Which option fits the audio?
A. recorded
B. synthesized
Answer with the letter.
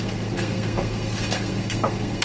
B